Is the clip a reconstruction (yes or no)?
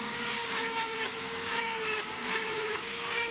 yes